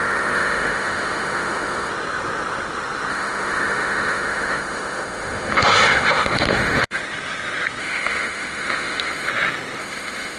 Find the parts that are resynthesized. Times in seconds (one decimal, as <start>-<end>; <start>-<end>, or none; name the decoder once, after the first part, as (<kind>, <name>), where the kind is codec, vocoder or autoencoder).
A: 0.0-1.9 (autoencoder, DAC-VAE); 3.1-7.0; 7.8-9.3; 9.8-10.4